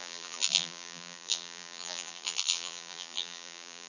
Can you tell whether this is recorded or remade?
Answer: remade